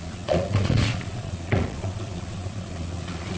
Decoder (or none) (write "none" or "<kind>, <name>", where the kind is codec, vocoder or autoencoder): vocoder, Vocos